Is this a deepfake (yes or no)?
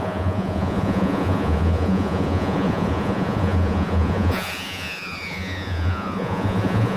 yes